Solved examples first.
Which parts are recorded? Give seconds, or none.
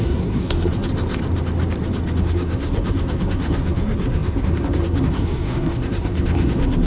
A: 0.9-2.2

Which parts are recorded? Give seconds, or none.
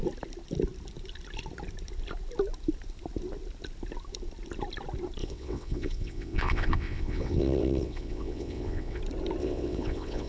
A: 0.0-5.2; 9.0-9.4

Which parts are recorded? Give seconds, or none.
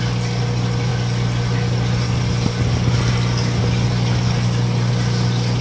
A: 0.0-5.6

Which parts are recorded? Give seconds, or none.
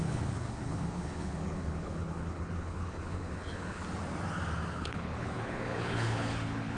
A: 3.8-4.7